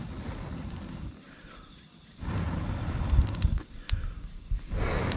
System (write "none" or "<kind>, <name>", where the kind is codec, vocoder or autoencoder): none